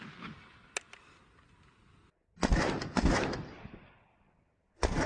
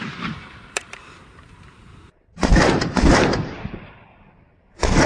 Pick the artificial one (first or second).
second